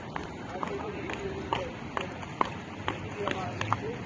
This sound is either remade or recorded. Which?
remade